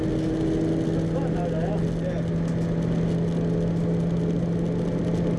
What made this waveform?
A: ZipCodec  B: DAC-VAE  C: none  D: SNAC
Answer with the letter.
C